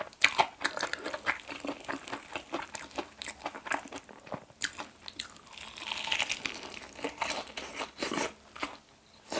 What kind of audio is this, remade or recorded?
recorded